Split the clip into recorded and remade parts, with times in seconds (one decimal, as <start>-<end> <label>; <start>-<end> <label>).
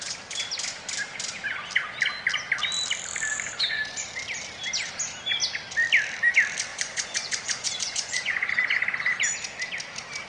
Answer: 0.0-3.3 recorded; 3.3-4.1 remade; 4.1-6.7 recorded; 6.7-8.5 remade; 8.5-10.3 recorded